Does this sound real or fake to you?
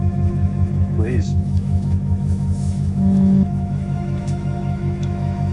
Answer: fake